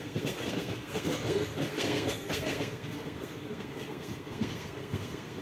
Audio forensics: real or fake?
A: fake